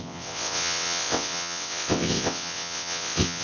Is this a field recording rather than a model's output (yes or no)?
no